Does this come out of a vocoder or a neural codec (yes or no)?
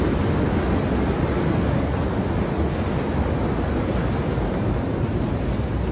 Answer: no